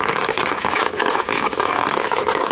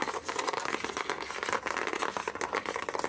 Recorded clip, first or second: second